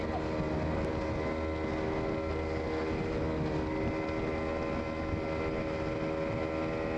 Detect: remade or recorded recorded